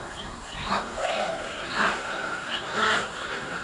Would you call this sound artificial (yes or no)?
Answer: yes